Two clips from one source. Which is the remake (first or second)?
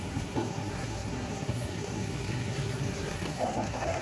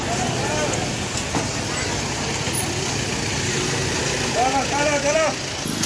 first